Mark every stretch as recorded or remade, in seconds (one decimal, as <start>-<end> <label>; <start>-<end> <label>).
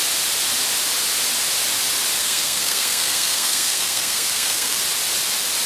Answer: 0.0-2.2 recorded; 2.2-4.8 remade; 4.8-5.7 recorded